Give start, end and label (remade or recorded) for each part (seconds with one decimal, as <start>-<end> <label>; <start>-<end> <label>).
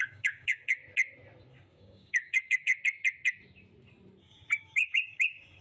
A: 0.0-0.8 remade; 0.8-1.5 recorded; 1.5-2.7 remade; 2.7-4.2 recorded; 4.2-5.6 remade